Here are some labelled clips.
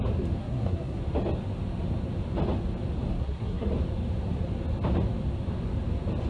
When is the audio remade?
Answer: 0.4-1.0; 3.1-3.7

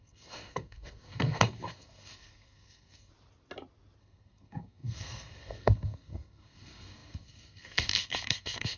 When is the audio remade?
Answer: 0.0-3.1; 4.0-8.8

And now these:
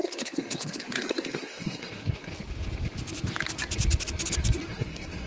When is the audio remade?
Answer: 0.0-2.3; 4.7-5.3

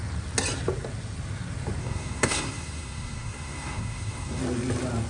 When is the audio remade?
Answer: 1.8-4.4